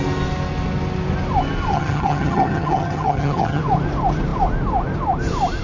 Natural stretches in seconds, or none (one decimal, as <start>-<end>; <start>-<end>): 0.0-1.7; 3.6-5.6